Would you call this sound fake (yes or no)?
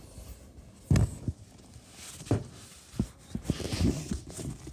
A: no